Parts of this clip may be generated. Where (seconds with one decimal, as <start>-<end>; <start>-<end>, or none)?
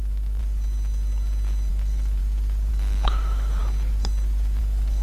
0.0-0.4; 1.7-2.2; 2.7-3.6; 4.6-5.0